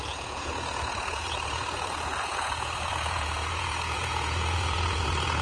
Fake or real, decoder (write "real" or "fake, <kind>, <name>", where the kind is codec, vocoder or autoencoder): fake, vocoder, Vocos